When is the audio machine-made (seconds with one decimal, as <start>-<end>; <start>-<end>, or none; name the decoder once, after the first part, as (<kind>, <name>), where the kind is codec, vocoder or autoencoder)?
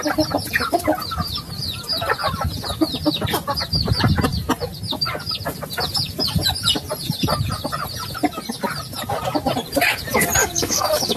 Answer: 10.4-11.2 (codec, DAC)